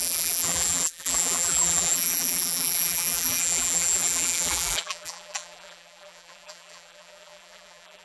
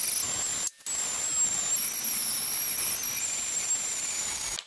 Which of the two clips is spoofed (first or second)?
first